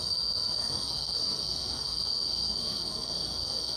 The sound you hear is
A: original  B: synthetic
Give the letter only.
B